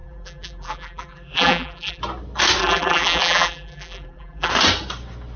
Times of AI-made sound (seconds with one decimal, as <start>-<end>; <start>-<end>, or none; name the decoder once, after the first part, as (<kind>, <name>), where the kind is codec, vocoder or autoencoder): 0.0-2.0 (vocoder, BigVGAN v2); 2.6-4.5

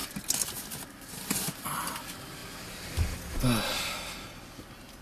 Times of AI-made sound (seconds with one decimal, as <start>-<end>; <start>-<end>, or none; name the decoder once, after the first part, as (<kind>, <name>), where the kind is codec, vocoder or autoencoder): none

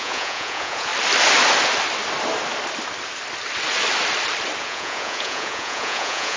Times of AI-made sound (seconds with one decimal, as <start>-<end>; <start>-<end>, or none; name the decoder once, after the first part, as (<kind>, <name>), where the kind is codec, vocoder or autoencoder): 0.0-0.9 (vocoder, Vocos); 4.6-6.4

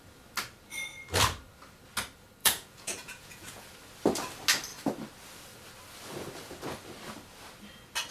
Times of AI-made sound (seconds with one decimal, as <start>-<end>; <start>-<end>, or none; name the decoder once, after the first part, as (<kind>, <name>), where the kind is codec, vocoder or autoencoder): 2.4-3.7 (vocoder, Vocos)

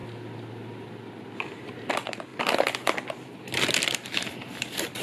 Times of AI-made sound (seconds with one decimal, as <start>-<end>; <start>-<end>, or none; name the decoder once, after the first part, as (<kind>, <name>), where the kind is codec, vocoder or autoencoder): 1.9-2.3 (vocoder, BigVGAN v2)

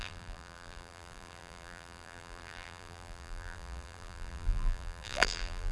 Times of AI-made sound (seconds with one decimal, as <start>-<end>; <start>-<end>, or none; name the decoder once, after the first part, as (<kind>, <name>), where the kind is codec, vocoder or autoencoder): 0.0-5.7 (vocoder, BigVGAN v2)

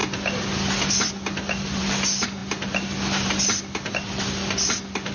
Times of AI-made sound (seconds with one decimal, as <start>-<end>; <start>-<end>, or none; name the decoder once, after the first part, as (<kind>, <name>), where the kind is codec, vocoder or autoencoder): none

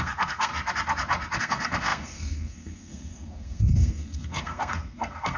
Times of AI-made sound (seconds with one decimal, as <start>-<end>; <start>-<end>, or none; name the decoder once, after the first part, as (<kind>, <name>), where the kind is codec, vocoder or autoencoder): 0.0-0.5 (codec, SNAC); 1.4-5.4